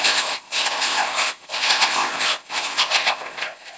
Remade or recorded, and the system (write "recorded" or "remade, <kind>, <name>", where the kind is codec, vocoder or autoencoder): remade, codec, ZipCodec